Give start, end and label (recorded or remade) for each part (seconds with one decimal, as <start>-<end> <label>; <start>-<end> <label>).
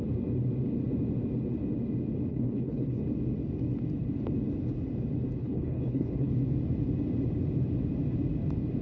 0.0-2.3 recorded; 2.3-3.0 remade; 3.0-5.4 recorded; 5.4-6.3 remade; 6.3-8.8 recorded